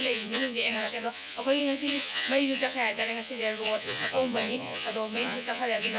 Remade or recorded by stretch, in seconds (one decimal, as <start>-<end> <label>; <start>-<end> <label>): 0.0-6.0 remade